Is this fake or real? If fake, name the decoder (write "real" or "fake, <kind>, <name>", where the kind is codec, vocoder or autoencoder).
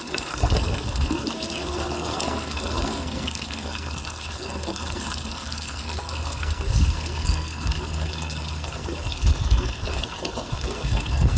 fake, codec, SNAC